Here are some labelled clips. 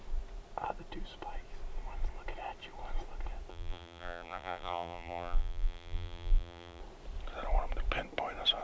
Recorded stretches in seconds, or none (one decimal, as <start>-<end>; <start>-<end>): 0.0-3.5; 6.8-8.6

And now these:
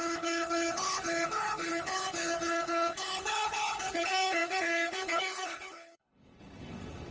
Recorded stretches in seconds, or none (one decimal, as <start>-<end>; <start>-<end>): none

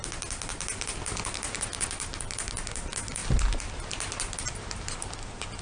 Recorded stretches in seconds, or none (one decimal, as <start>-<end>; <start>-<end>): 0.0-5.6

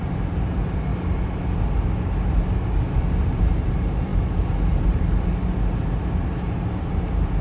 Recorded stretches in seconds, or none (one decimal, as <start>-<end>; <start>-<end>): 0.9-3.2; 4.1-6.5